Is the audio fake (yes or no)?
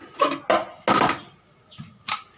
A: no